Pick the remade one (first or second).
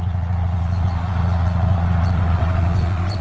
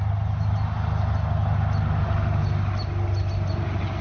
first